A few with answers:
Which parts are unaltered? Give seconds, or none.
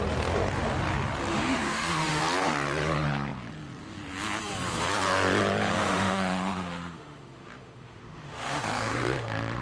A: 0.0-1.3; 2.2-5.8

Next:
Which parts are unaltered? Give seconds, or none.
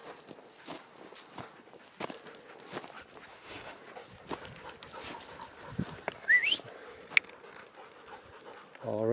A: 0.0-3.3; 3.8-9.1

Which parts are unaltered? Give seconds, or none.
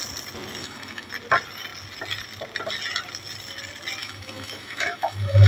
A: 0.0-0.6; 1.1-4.0